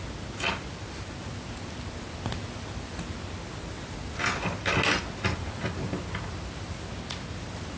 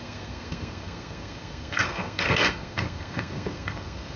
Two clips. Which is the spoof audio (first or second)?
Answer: second